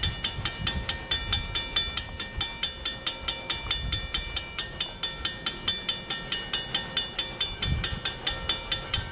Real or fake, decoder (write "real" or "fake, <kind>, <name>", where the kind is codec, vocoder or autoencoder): real